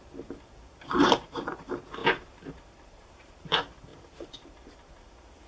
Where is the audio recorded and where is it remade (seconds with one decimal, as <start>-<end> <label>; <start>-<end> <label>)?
0.0-1.0 recorded; 1.0-1.6 remade; 1.6-2.0 recorded; 2.0-3.5 remade; 3.5-3.9 recorded; 3.9-4.9 remade; 4.9-5.5 recorded